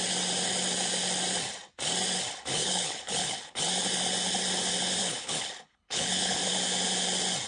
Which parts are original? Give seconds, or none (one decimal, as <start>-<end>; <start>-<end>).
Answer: 0.0-2.5; 3.6-5.0; 6.4-7.5